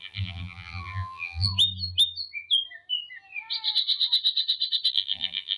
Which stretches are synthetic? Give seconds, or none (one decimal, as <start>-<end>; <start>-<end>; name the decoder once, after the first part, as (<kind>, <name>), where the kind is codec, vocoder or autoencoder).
0.0-1.5 (vocoder, BigVGAN v2); 4.9-5.6